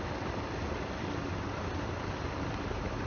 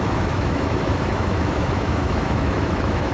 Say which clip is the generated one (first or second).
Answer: second